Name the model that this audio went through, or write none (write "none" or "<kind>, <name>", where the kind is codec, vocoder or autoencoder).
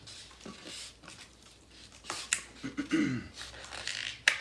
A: none